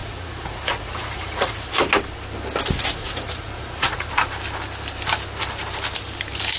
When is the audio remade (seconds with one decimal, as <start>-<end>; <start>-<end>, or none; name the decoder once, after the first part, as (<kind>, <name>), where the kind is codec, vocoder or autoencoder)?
0.0-1.7 (vocoder, Vocos); 3.0-4.1